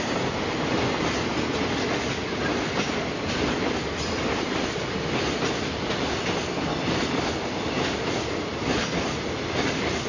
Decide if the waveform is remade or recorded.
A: recorded